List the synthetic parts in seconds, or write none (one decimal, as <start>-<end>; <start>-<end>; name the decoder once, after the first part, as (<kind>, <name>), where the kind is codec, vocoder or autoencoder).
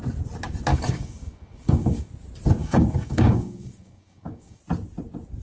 0.7-2.1 (codec, DAC); 2.6-4.6